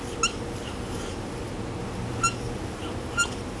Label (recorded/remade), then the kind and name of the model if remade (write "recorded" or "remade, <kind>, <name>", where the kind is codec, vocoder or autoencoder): recorded